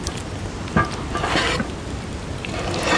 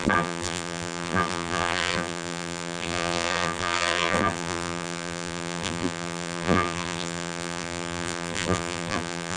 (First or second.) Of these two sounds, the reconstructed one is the second